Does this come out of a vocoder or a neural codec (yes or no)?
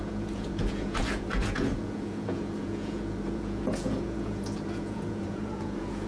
yes